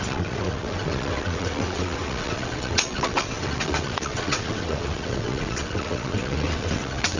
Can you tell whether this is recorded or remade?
remade